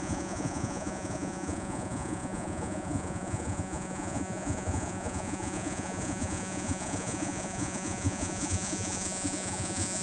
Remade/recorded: remade